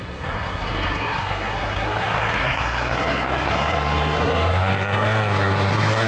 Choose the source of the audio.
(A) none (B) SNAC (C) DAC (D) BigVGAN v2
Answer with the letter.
B